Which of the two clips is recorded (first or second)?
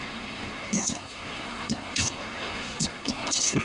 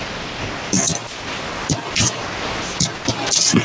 second